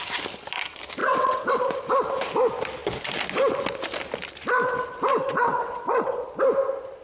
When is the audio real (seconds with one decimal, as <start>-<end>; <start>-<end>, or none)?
0.0-1.0; 1.5-5.1; 6.2-7.0